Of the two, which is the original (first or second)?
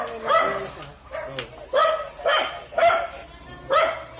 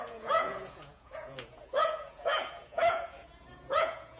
first